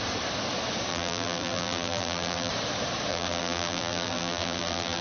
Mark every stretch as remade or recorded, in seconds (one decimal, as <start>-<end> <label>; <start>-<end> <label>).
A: 0.0-0.9 recorded; 0.9-2.5 remade; 2.5-3.1 recorded; 3.1-5.0 remade